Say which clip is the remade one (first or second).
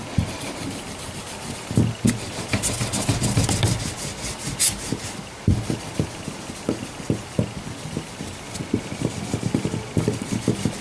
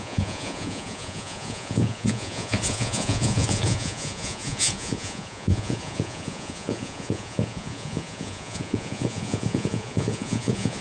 second